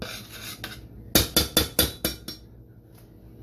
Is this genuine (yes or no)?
yes